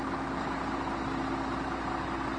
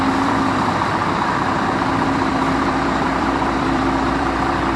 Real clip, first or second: first